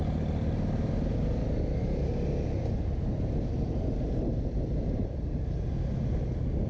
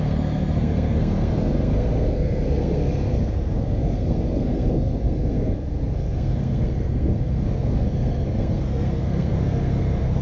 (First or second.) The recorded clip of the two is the first